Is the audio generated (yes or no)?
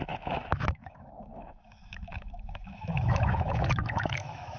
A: yes